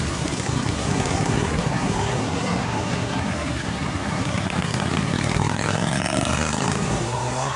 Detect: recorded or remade remade